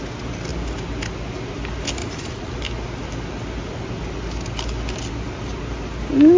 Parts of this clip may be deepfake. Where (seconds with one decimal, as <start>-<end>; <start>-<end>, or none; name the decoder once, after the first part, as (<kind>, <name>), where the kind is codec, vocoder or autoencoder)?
2.0-2.5 (vocoder, Vocos)